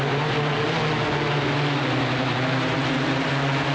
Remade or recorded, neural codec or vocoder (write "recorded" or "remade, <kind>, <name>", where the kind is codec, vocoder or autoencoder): recorded